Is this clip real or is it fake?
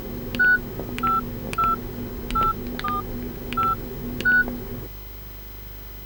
real